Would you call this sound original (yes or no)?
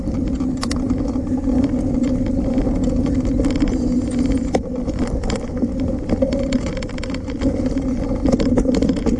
yes